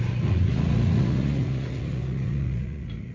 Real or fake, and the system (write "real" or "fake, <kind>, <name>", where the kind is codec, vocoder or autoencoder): fake, vocoder, Vocos